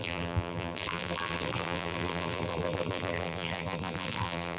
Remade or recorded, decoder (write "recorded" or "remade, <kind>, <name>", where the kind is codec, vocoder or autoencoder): remade, vocoder, BigVGAN v2